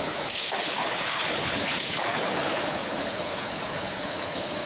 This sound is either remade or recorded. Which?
remade